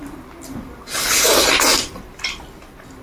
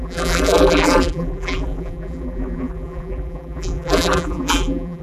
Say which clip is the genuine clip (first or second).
first